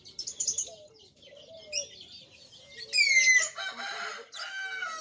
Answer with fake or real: real